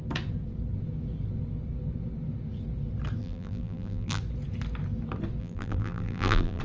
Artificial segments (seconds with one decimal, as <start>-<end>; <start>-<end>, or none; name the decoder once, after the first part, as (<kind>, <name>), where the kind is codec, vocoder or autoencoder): 3.2-4.2 (vocoder, BigVGAN v2); 5.4-6.6